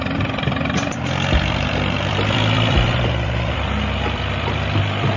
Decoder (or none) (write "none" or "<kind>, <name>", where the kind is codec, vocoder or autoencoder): vocoder, BigVGAN v2